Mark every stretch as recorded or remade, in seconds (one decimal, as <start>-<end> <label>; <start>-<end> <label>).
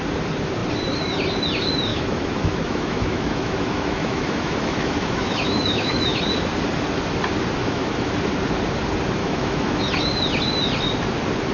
0.0-1.9 recorded; 1.9-6.2 remade; 6.2-7.6 recorded; 7.6-8.1 remade; 8.1-9.2 recorded; 9.2-9.8 remade; 9.8-11.5 recorded